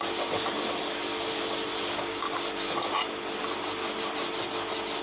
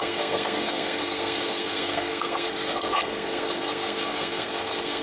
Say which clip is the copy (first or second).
second